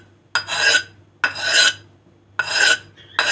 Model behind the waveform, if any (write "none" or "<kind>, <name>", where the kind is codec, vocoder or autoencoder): none